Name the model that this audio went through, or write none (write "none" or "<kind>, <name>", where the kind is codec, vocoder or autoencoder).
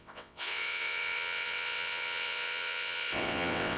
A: vocoder, WaveNeXt